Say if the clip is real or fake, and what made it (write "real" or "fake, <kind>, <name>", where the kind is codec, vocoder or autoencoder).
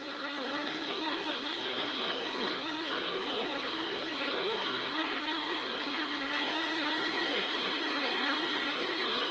fake, codec, SNAC